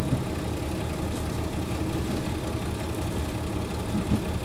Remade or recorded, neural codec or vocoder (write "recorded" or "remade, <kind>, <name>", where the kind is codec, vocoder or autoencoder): recorded